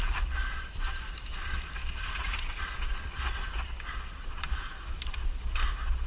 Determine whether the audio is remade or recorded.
recorded